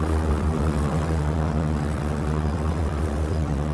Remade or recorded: remade